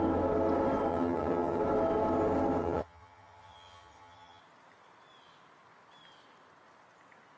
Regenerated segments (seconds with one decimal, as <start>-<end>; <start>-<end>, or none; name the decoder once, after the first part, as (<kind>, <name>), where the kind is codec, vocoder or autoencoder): 0.9-1.6 (vocoder, HiFi-GAN); 2.6-4.4